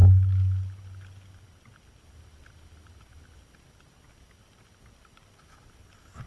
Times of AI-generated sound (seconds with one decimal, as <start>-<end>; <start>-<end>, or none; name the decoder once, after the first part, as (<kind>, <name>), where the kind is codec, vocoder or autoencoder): none